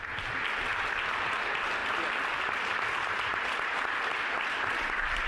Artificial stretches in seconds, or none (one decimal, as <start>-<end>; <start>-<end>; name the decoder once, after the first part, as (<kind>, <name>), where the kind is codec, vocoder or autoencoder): 1.8-5.3 (vocoder, BigVGAN v2)